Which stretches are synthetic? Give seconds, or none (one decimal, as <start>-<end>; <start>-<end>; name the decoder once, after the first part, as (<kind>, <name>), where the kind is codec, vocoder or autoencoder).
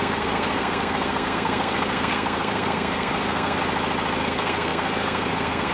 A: 0.0-3.6 (codec, SNAC); 4.2-5.7